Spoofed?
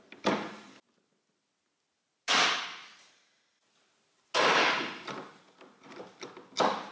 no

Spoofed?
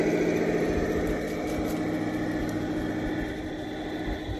no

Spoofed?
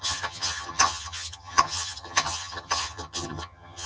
yes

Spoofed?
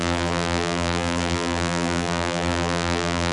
yes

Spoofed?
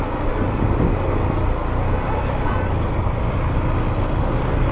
no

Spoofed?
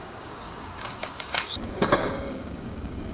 yes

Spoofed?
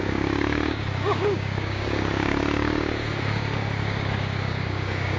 yes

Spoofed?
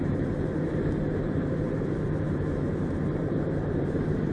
yes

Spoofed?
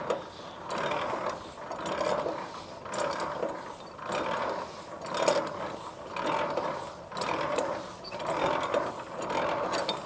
no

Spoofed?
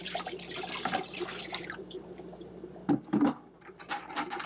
yes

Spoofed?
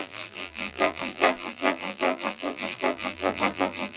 yes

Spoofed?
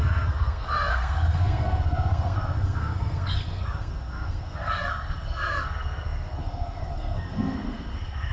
yes